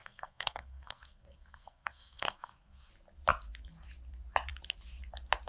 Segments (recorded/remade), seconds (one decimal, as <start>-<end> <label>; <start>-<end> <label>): 0.0-2.9 remade; 2.9-5.5 recorded